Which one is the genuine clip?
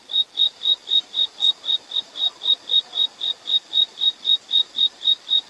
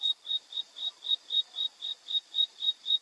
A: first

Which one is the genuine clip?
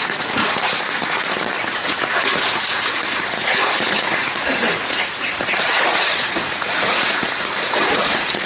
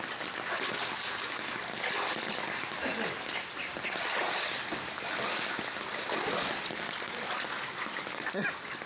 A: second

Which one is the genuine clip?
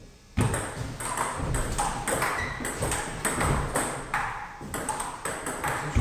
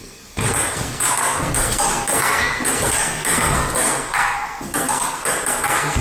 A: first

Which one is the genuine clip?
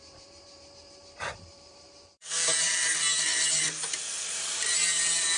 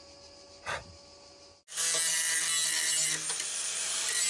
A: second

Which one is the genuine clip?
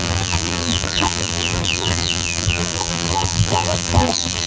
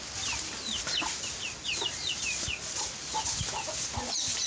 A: second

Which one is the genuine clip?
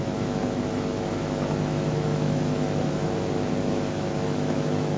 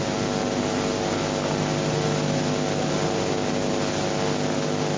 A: second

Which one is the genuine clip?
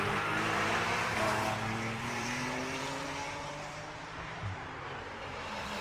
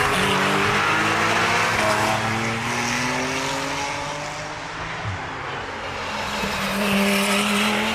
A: second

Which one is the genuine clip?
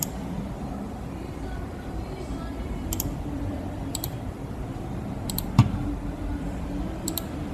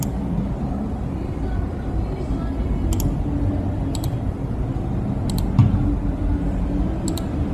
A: second